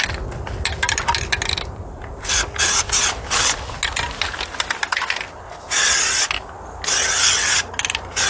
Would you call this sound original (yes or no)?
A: yes